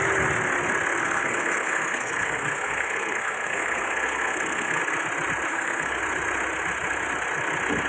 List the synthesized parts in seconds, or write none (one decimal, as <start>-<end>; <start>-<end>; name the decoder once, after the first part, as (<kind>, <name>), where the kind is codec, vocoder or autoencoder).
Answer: 1.0-4.8 (codec, SNAC); 5.5-6.0